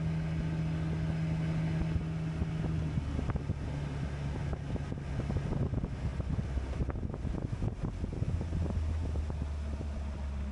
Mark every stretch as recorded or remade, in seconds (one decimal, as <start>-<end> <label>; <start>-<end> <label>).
0.0-10.5 recorded